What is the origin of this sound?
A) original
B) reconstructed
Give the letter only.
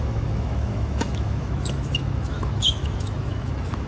B